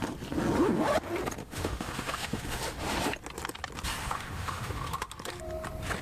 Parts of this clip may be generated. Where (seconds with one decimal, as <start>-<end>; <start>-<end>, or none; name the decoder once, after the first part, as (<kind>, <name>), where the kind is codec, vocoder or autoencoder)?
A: 1.4-2.6 (autoencoder, DAC-VAE); 4.0-5.1